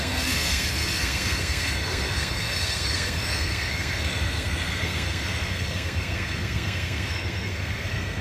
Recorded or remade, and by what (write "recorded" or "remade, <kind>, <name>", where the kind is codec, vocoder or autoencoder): remade, codec, SNAC